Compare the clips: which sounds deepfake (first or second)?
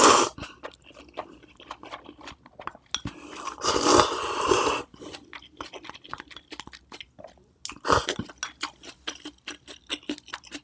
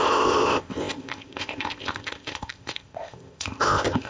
second